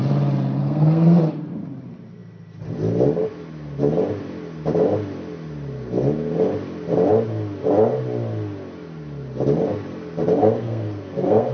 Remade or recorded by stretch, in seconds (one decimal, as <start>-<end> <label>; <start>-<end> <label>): 0.0-0.6 recorded; 0.6-1.2 remade; 1.2-10.4 recorded; 10.4-11.5 remade